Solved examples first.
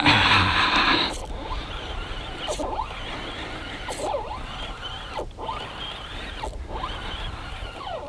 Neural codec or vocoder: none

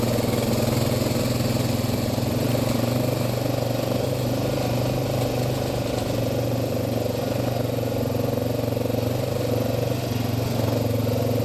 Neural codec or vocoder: none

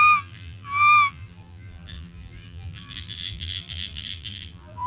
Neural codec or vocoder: vocoder, BigVGAN v2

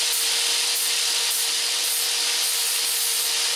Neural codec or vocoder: none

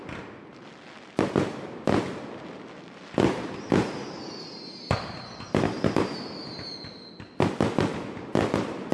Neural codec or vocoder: none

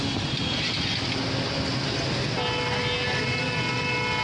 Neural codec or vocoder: none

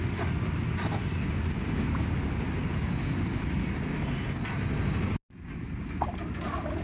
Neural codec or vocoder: none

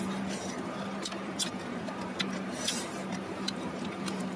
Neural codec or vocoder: vocoder, BigVGAN v2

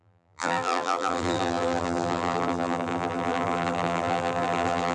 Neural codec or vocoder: vocoder, BigVGAN v2